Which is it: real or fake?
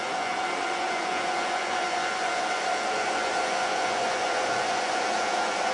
fake